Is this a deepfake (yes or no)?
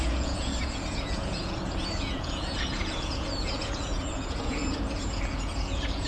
yes